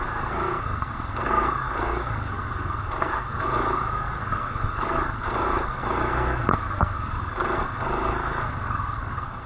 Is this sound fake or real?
fake